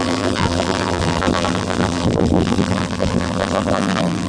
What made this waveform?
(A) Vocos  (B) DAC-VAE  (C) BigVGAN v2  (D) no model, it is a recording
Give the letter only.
C